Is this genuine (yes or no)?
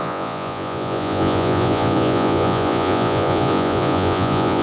no